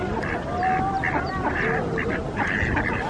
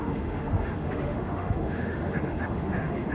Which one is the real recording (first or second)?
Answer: first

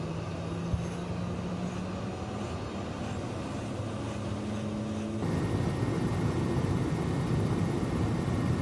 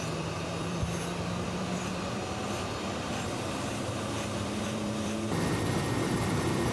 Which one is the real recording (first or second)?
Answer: first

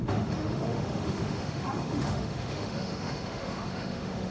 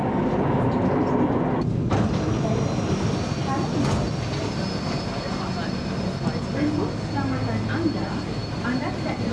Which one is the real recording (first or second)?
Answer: second